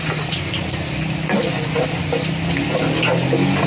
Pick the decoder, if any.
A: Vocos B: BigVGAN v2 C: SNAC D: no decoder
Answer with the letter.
D